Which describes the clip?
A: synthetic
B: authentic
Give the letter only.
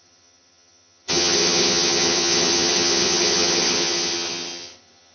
A